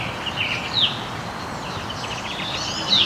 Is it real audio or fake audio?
real